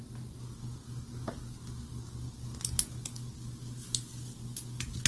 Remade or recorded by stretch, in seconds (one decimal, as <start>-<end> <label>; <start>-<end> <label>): 0.0-5.1 recorded